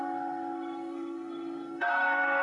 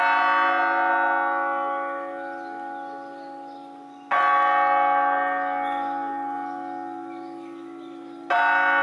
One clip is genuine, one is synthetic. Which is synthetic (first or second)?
first